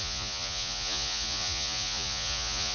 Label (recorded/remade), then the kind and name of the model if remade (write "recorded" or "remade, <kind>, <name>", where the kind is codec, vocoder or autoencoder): remade, vocoder, Vocos